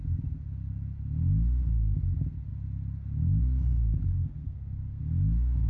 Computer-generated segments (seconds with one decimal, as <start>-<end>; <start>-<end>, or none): 4.1-5.0

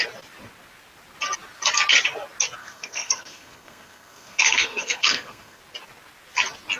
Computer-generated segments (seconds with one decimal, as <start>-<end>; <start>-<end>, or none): 2.6-5.6

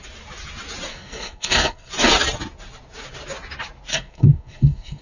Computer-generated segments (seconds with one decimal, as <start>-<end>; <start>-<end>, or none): 0.9-1.9; 3.9-5.0